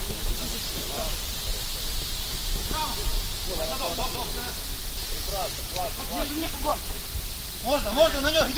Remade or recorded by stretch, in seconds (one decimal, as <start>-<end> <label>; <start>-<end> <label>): 0.0-3.1 recorded; 3.1-4.3 remade; 4.3-4.7 recorded; 4.7-6.0 remade; 6.0-6.7 recorded; 6.7-7.5 remade; 7.5-8.6 recorded